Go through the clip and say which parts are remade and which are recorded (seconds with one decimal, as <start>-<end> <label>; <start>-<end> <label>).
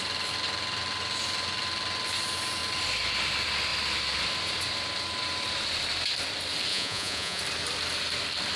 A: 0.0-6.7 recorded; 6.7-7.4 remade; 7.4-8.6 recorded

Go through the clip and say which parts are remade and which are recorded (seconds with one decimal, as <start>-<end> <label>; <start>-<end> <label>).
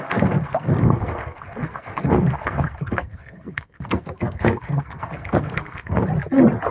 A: 0.0-6.0 remade; 6.0-6.7 recorded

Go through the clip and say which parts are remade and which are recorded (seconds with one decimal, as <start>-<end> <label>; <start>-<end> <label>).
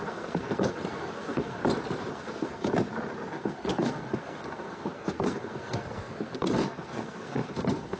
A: 0.0-1.6 remade; 1.6-2.1 recorded; 2.1-2.6 remade; 2.6-3.3 recorded; 3.3-8.0 remade